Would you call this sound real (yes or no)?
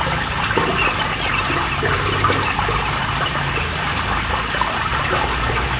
yes